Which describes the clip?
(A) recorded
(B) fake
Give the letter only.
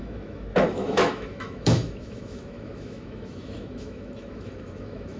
B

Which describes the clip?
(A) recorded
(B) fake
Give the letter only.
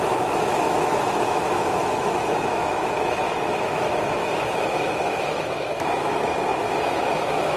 B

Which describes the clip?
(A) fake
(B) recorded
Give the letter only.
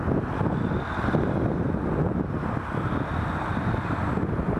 B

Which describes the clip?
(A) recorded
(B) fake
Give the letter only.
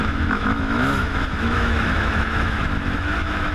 B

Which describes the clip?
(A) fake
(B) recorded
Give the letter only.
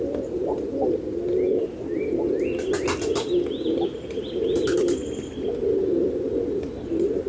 B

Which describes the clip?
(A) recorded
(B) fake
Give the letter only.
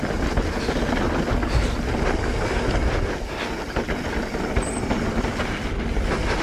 A